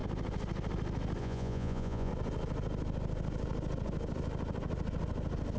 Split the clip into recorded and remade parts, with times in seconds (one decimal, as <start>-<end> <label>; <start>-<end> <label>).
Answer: 0.0-1.2 recorded; 1.2-2.1 remade; 2.1-5.6 recorded